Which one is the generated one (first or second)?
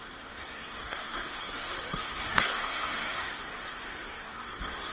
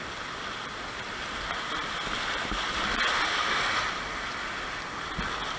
first